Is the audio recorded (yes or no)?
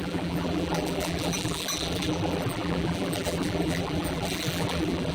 no